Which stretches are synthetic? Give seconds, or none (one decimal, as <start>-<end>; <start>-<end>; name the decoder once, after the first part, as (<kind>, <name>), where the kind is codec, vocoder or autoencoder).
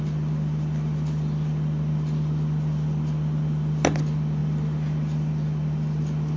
none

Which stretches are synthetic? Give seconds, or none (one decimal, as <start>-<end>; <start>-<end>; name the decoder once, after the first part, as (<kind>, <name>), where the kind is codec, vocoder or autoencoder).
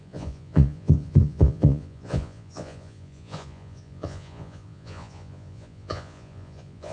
0.0-6.9 (vocoder, Vocos)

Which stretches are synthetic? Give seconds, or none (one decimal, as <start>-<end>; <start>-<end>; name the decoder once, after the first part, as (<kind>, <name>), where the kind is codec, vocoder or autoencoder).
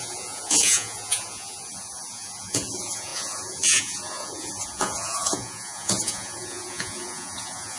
0.0-7.8 (vocoder, Vocos)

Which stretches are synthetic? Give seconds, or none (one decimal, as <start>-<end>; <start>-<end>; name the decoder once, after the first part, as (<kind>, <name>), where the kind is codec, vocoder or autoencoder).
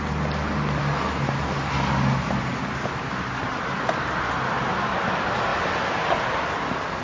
none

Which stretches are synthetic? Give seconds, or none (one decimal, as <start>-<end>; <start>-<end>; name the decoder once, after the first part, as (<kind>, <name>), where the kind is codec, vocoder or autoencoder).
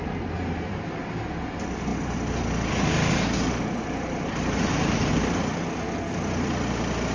none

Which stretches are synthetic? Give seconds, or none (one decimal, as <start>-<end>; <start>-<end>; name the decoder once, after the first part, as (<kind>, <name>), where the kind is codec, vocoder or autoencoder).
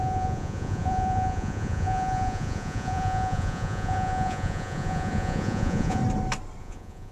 0.0-6.0 (vocoder, Vocos); 6.6-7.1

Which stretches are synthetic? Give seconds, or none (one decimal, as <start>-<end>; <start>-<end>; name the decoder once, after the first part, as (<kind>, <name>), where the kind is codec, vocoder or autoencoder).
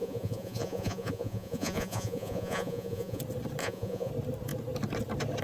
0.0-3.2 (vocoder, Vocos); 3.6-4.1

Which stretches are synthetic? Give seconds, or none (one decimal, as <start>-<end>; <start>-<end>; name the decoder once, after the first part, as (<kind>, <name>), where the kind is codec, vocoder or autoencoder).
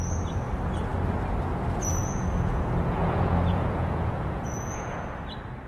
2.0-5.1 (vocoder, Vocos)